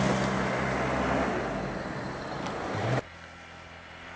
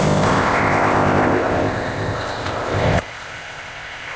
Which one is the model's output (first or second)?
second